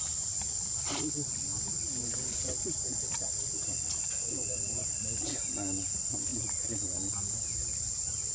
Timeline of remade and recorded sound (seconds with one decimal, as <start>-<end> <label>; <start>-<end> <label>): 0.0-8.3 recorded